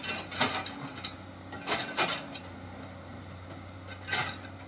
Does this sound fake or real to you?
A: real